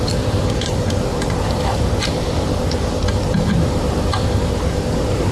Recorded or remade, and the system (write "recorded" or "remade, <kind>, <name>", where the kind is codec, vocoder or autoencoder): remade, vocoder, BigVGAN v2